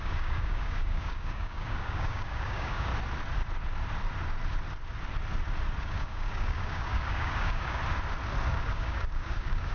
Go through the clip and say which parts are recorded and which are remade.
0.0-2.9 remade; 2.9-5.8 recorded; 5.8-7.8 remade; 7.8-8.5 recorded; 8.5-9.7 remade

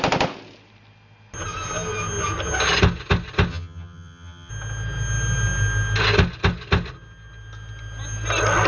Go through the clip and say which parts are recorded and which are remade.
0.0-3.5 recorded; 3.5-4.5 remade; 4.5-8.7 recorded

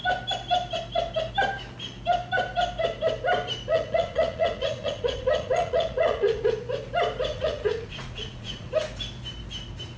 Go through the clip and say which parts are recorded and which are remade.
0.0-3.7 recorded; 3.7-6.5 remade; 6.5-7.3 recorded; 7.3-8.7 remade; 8.7-10.0 recorded

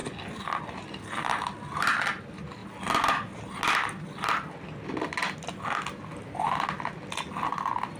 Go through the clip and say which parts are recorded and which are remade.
0.0-8.0 recorded

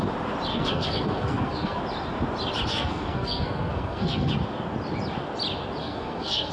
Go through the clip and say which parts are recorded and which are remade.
0.0-0.5 recorded; 0.5-1.8 remade; 1.8-2.7 recorded; 2.7-4.3 remade; 4.3-5.8 recorded; 5.8-6.5 remade